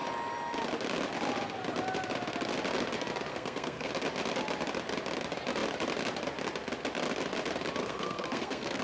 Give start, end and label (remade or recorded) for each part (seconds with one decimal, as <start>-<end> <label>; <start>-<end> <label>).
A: 0.0-3.3 recorded; 3.3-3.9 remade; 3.9-7.8 recorded; 7.8-8.8 remade

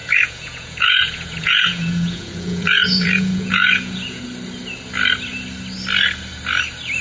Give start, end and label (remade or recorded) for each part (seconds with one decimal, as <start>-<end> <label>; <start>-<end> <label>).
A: 0.0-4.2 remade; 4.2-7.0 recorded

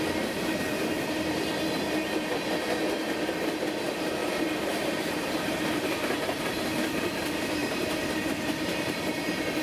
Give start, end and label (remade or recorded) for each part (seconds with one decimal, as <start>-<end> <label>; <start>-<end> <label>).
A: 0.0-4.2 recorded; 4.2-6.4 remade; 6.4-7.6 recorded; 7.6-9.6 remade

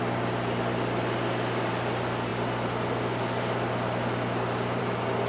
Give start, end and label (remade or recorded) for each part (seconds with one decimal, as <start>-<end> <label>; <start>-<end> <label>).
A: 0.0-5.3 recorded

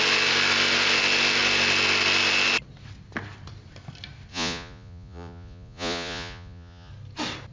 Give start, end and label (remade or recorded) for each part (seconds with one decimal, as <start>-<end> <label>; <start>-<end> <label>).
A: 0.0-4.3 recorded; 4.3-6.9 remade; 6.9-7.5 recorded

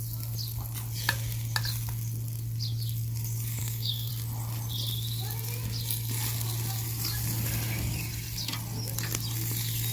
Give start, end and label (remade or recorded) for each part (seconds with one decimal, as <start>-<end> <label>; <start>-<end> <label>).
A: 0.0-3.6 recorded; 3.6-4.1 remade; 4.1-9.9 recorded